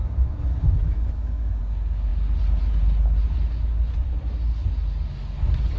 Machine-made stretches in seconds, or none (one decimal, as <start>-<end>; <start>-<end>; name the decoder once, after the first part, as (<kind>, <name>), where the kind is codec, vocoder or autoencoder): 0.0-1.6 (autoencoder, DAC-VAE)